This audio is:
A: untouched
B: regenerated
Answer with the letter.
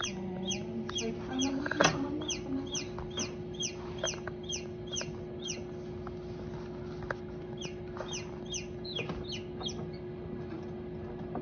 A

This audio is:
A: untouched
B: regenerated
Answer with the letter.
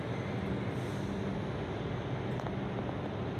A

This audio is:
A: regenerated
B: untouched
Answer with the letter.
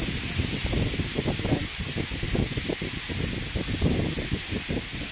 B